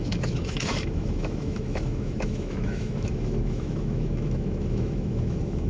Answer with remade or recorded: remade